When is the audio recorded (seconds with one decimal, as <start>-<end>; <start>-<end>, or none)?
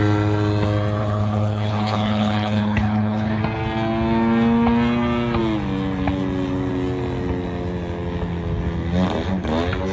0.0-1.0; 3.4-9.9